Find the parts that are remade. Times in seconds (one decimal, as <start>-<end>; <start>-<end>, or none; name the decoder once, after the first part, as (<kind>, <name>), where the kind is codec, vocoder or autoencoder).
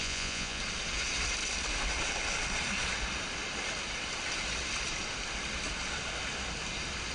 0.0-0.6 (vocoder, Vocos)